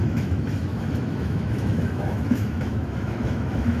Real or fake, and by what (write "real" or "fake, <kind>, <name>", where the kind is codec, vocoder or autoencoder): fake, autoencoder, DAC-VAE